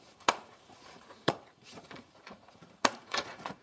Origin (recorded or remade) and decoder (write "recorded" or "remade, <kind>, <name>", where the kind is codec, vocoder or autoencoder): remade, vocoder, Vocos